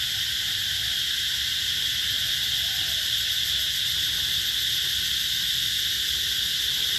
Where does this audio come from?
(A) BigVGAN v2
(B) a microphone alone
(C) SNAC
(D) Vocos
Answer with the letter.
B